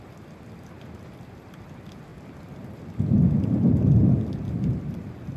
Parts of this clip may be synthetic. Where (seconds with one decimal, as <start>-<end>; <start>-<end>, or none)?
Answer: none